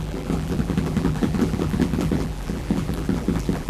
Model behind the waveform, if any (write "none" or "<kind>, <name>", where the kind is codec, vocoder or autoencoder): vocoder, BigVGAN v2